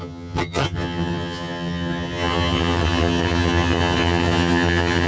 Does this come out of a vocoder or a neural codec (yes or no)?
yes